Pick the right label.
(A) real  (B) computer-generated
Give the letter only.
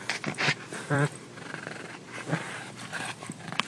B